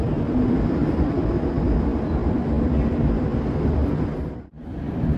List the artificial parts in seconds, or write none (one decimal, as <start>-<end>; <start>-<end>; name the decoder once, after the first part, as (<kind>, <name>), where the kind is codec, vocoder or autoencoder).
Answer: 0.0-5.2 (vocoder, BigVGAN v2)